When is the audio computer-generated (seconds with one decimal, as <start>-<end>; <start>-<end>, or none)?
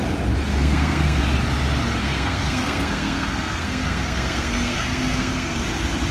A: 0.5-1.2; 2.0-5.6